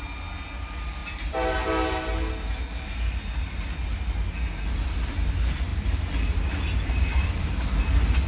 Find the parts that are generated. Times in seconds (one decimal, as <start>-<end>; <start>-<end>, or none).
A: none